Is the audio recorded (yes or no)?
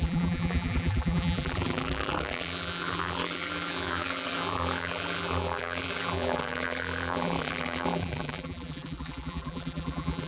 no